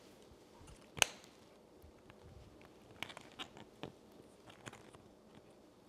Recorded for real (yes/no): yes